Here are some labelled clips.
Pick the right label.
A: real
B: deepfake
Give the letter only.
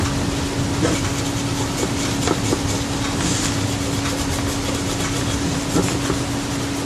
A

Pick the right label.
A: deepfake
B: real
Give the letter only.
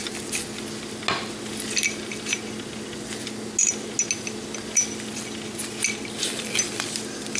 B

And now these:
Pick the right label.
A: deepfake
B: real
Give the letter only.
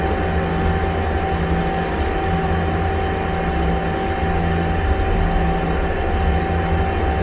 B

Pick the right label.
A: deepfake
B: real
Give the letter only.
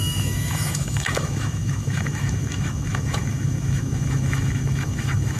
A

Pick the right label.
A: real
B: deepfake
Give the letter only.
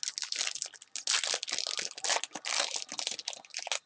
A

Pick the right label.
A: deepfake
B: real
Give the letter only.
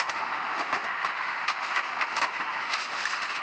A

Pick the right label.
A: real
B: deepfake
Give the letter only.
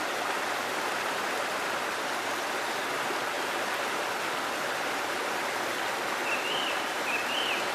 A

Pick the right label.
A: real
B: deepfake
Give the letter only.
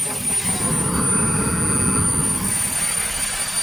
A